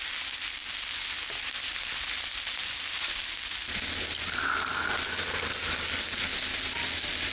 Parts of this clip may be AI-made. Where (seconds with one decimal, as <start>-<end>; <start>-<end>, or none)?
none